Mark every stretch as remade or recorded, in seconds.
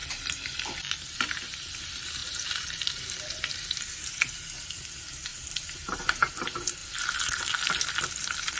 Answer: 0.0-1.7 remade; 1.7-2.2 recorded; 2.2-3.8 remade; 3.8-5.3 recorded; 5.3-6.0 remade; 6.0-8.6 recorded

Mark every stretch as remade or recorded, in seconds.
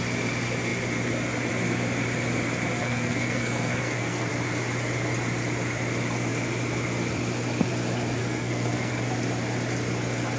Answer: 0.0-2.8 recorded; 2.8-4.3 remade; 4.3-8.2 recorded; 8.2-9.1 remade; 9.1-10.4 recorded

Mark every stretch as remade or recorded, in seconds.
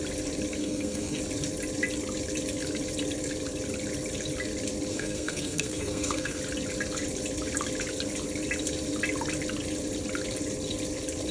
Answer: 0.0-0.6 recorded; 0.6-1.2 remade; 1.2-4.9 recorded; 4.9-6.4 remade; 6.4-11.3 recorded